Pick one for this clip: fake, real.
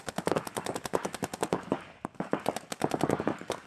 fake